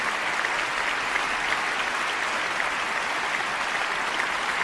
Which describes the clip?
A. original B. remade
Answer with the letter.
A